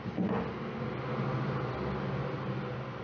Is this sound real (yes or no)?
yes